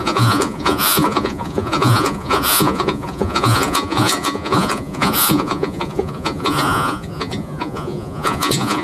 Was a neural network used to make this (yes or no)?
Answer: yes